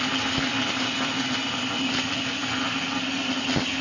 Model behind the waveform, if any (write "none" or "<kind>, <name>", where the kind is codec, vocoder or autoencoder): none